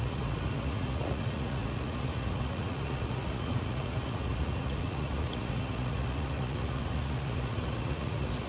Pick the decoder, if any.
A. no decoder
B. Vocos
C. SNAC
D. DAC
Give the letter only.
B